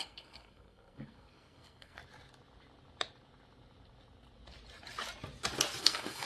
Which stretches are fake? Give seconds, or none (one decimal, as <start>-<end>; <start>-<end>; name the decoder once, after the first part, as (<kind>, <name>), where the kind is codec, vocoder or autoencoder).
0.0-2.0 (codec, SNAC); 5.8-6.3